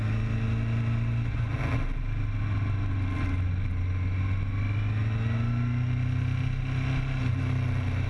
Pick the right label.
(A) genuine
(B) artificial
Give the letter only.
A